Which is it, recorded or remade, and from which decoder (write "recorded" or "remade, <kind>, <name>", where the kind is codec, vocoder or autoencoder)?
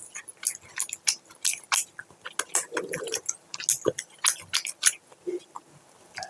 recorded